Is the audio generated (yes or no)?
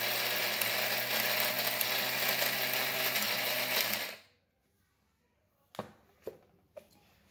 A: no